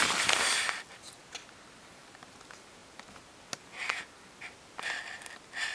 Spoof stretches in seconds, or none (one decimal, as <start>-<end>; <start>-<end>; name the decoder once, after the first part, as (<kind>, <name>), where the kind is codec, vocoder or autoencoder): none